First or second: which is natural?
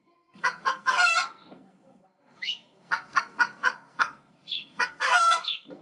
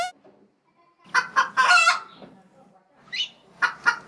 second